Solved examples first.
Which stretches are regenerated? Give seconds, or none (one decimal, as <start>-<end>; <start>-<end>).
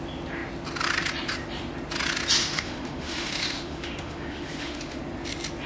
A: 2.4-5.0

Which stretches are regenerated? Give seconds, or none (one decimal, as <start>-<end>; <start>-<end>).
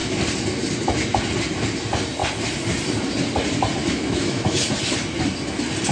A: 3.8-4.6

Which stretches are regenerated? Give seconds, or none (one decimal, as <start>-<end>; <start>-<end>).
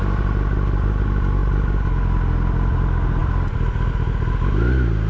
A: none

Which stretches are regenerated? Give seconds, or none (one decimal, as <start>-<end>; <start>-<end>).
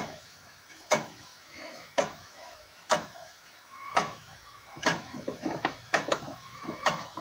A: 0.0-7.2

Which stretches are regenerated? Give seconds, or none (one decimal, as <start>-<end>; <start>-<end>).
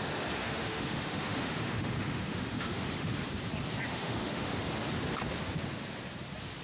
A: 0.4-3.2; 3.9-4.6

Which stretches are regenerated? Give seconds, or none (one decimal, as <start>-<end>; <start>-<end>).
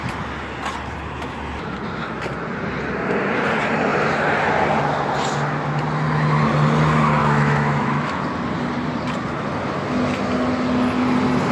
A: 7.2-8.2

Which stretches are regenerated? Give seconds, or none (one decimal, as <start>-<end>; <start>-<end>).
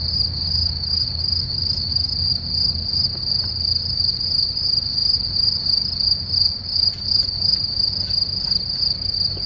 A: 0.6-2.1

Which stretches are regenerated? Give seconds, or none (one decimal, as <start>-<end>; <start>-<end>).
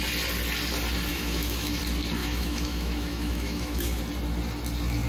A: 1.1-1.8; 2.2-4.0